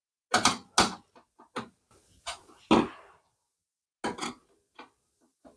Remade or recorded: recorded